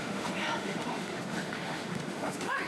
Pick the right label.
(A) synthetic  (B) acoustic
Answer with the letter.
A